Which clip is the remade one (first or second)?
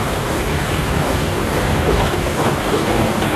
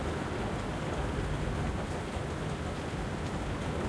first